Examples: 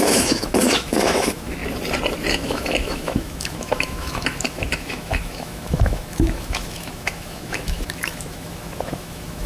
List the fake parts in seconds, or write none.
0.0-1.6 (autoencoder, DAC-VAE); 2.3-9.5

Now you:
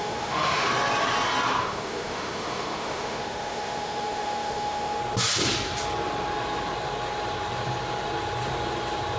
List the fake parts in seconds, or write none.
0.0-0.7 (autoencoder, DAC-VAE); 1.6-5.0

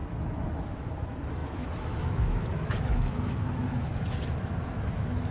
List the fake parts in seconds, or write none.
0.0-3.9 (autoencoder, DAC-VAE); 4.4-5.3

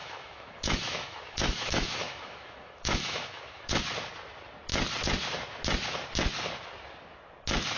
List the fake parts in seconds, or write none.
0.0-3.8 (autoencoder, DAC-VAE)

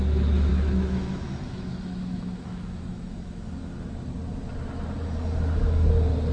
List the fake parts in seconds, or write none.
0.5-3.7 (autoencoder, DAC-VAE)